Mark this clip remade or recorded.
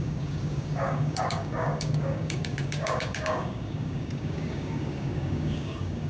remade